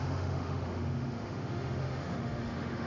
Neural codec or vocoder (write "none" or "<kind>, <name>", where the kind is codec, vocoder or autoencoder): autoencoder, DAC-VAE